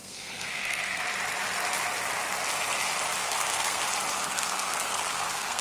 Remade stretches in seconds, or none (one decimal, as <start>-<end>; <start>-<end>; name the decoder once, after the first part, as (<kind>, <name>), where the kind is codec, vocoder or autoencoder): 0.0-1.0 (codec, SNAC); 3.2-3.8; 4.2-5.6